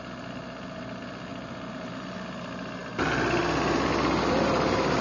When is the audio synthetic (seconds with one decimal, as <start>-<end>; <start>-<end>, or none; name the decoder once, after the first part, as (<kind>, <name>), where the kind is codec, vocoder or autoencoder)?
none